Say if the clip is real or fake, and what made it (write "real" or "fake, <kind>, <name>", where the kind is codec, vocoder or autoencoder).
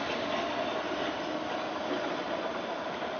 real